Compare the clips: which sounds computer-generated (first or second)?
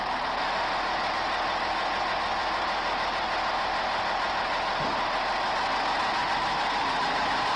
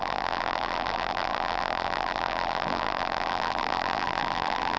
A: second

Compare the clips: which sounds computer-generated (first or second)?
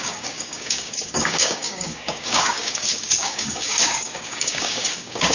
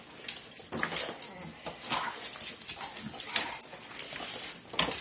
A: first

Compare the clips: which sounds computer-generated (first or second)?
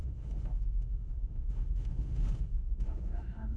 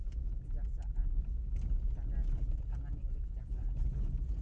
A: first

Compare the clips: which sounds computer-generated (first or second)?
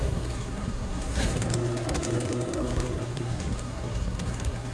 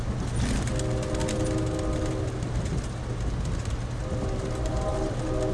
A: first